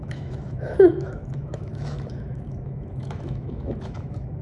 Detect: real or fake fake